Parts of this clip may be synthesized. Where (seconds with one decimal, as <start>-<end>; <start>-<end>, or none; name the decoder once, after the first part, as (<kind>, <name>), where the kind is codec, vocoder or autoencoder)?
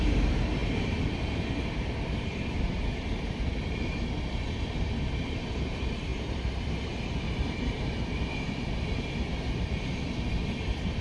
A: 0.0-11.0 (vocoder, BigVGAN v2)